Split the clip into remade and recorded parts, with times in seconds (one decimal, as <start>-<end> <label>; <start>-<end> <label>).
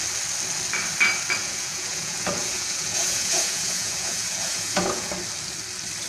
0.0-1.4 recorded; 1.4-5.1 remade; 5.1-6.1 recorded